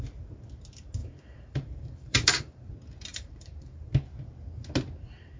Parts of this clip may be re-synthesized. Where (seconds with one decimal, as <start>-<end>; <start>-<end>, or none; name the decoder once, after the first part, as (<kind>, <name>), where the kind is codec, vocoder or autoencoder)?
1.0-2.7 (vocoder, BigVGAN v2); 3.1-3.9